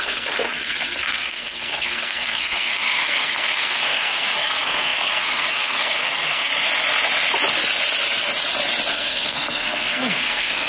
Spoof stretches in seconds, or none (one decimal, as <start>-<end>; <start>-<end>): 0.0-6.5; 8.9-10.7